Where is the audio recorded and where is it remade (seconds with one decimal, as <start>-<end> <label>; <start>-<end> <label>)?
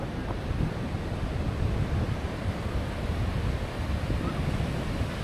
0.0-1.3 recorded; 1.3-2.6 remade; 2.6-5.2 recorded